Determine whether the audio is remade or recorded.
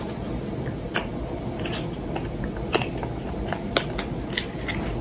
recorded